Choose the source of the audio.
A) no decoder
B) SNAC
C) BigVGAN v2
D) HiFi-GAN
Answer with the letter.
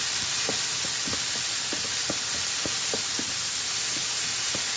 A